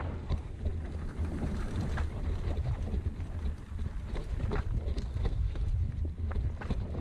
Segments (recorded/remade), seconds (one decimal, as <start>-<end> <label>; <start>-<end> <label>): 0.0-5.1 recorded; 5.1-5.6 remade; 5.6-7.0 recorded